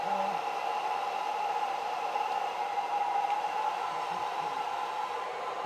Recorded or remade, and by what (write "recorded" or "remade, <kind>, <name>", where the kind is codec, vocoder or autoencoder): remade, vocoder, BigVGAN v2